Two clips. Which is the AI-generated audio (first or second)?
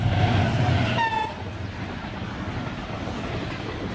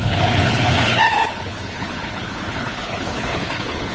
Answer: second